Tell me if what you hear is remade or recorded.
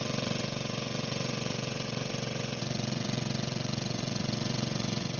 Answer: remade